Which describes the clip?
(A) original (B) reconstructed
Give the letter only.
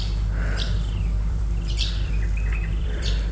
B